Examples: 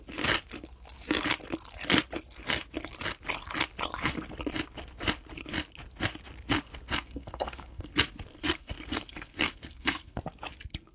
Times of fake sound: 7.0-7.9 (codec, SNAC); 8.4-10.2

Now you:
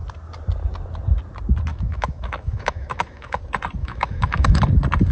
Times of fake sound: 1.7-3.4 (autoencoder, DAC-VAE); 3.8-4.6

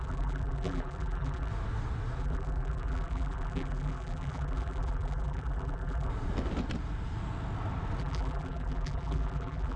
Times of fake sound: 0.0-1.5 (vocoder, BigVGAN v2); 2.2-6.1; 8.0-9.8

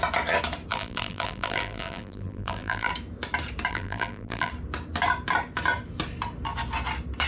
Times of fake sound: 0.7-2.9 (vocoder, BigVGAN v2); 3.7-4.5

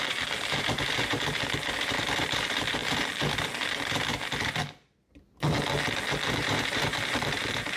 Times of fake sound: 0.0-2.8 (vocoder, BigVGAN v2); 6.3-7.8

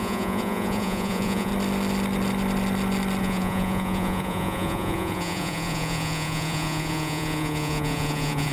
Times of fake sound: 0.0-1.5 (vocoder, Vocos); 3.2-8.5